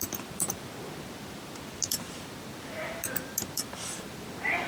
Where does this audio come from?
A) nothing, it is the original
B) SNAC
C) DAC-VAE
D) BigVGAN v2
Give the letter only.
D